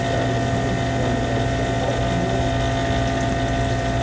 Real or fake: real